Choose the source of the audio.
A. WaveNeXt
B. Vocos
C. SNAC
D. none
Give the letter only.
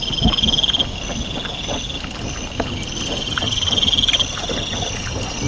D